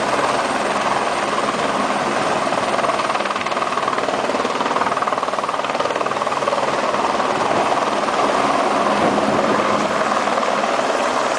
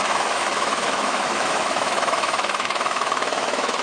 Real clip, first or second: first